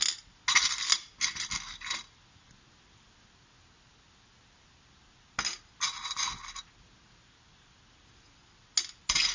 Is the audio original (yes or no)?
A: yes